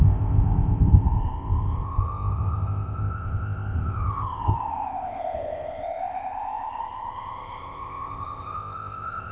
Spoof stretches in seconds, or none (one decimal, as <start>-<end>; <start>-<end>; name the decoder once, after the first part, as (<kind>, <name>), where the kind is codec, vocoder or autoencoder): 0.0-9.3 (codec, ZipCodec)